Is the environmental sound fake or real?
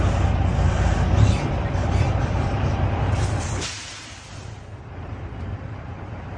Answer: fake